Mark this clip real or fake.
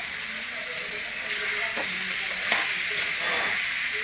real